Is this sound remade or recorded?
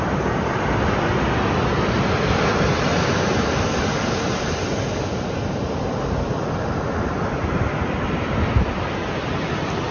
recorded